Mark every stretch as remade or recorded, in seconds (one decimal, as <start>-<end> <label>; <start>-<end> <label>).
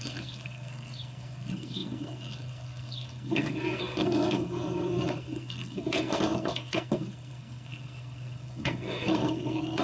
0.0-9.8 remade